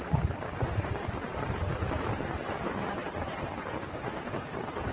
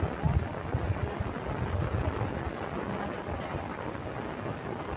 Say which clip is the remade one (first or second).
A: first